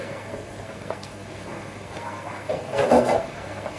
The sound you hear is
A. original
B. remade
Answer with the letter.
B